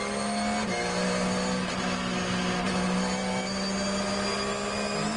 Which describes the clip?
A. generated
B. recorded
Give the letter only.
B